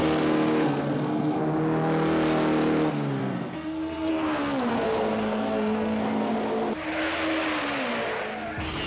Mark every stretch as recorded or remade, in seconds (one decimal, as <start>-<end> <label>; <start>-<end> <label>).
0.0-1.4 remade; 1.4-3.2 recorded; 3.2-4.1 remade; 4.1-4.7 recorded; 4.7-6.3 remade; 6.3-8.9 recorded